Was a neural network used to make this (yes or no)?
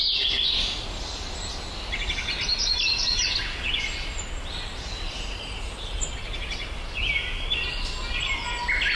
no